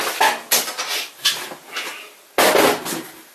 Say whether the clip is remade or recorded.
recorded